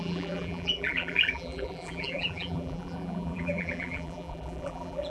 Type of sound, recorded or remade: remade